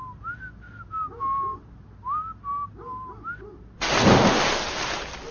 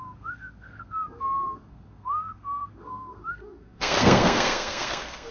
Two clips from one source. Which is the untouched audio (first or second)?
first